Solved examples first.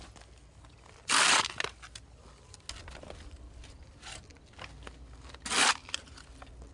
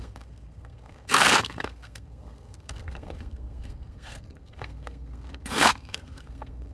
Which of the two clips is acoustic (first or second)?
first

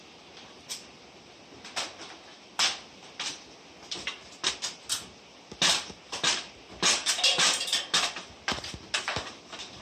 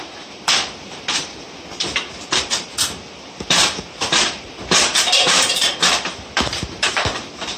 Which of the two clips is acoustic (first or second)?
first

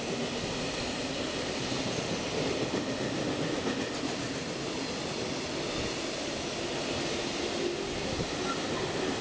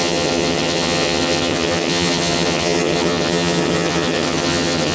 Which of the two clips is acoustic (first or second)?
first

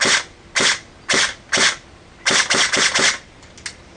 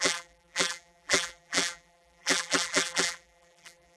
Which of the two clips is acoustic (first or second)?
first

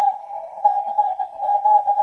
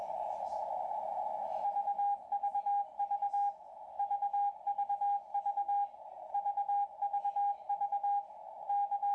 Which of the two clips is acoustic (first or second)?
second